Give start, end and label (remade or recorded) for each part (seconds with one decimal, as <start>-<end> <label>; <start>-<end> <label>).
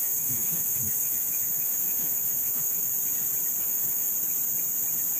0.0-2.9 remade; 2.9-3.6 recorded; 3.6-4.1 remade; 4.1-5.2 recorded